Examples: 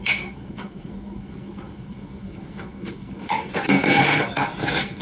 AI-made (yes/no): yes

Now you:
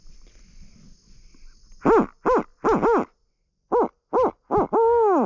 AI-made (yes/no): no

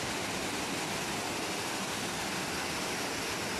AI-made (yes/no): no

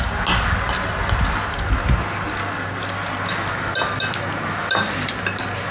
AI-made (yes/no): no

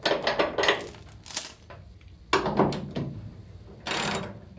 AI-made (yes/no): no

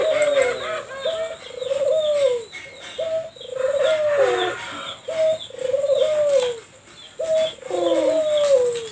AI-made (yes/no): no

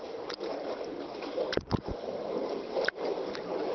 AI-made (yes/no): no